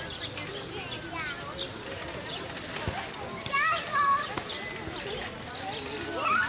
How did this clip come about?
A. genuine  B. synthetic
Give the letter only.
A